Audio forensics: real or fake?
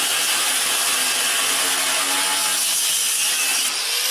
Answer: real